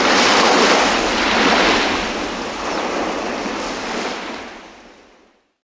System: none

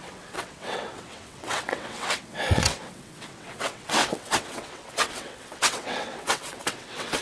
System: vocoder, WaveNeXt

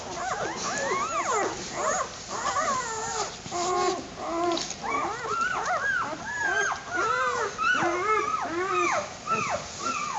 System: none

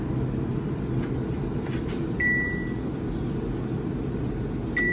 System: none